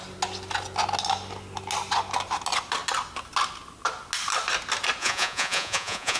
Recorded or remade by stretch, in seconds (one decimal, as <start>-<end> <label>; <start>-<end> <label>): 0.0-5.0 recorded; 5.0-6.2 remade